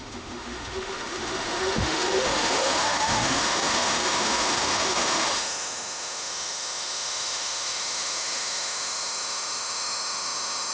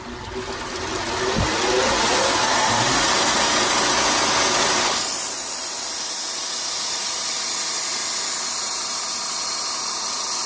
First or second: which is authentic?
second